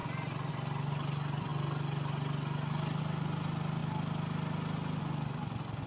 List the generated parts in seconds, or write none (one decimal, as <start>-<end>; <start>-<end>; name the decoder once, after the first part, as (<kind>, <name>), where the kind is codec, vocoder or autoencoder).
none